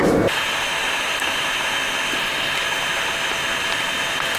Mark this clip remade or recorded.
recorded